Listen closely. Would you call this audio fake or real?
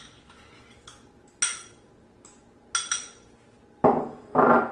real